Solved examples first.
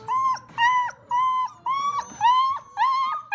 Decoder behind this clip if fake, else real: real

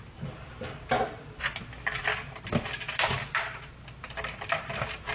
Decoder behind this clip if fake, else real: real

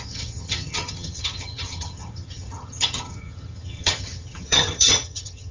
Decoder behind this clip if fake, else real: fake, vocoder, HiFi-GAN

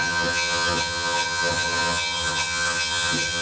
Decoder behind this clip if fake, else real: fake, vocoder, HiFi-GAN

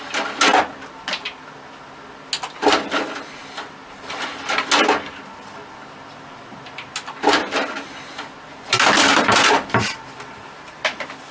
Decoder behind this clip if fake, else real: real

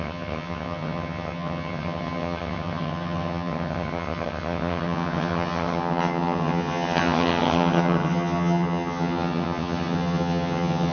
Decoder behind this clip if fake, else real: fake, vocoder, HiFi-GAN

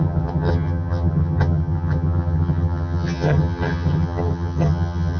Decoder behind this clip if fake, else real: fake, vocoder, HiFi-GAN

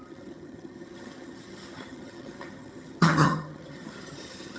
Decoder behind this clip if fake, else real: fake, vocoder, HiFi-GAN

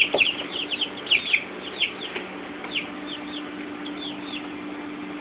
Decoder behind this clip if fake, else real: real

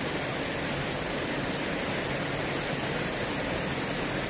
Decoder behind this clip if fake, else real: real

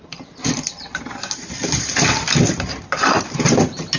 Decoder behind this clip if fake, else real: real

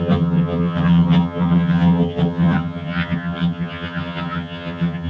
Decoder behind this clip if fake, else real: fake, vocoder, HiFi-GAN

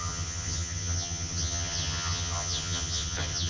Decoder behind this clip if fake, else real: fake, vocoder, HiFi-GAN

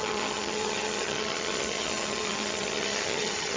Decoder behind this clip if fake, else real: fake, vocoder, HiFi-GAN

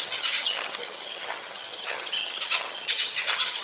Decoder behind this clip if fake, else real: fake, vocoder, HiFi-GAN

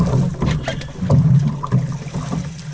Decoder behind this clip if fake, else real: real